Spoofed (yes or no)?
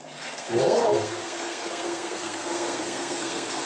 yes